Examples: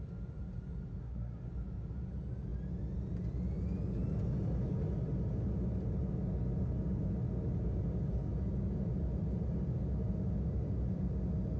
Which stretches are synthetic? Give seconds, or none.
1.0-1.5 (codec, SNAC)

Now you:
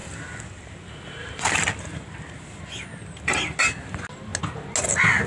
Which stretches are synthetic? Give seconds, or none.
none

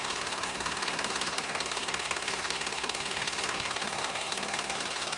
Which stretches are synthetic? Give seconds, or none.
0.0-5.2 (codec, SNAC)